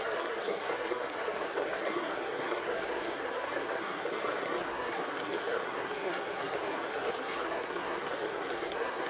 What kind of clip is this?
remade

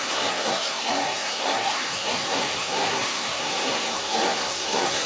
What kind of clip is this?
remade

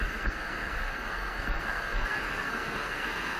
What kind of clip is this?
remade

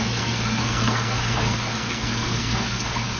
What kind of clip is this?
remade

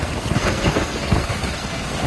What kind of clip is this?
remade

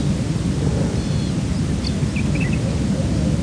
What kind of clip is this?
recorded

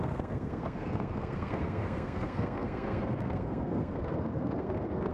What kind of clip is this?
remade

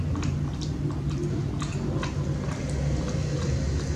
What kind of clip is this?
recorded